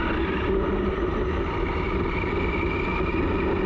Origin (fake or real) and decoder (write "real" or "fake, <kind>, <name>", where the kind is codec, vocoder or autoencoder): real